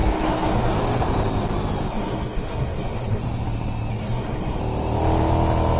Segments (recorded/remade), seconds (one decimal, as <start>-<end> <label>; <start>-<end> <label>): 0.0-0.7 remade; 0.7-1.9 recorded; 1.9-3.2 remade; 3.2-3.9 recorded; 3.9-4.6 remade; 4.6-5.8 recorded